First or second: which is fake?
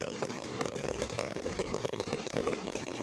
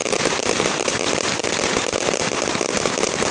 first